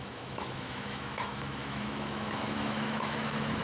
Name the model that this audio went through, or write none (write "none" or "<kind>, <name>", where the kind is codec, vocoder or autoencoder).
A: autoencoder, DAC-VAE